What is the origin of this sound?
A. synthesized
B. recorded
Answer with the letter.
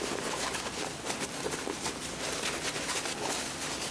B